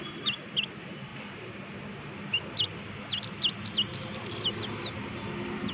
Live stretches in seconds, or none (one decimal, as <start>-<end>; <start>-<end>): 0.0-5.7